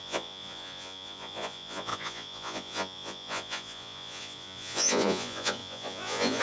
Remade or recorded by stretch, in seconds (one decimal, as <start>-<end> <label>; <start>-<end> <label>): 0.0-6.4 remade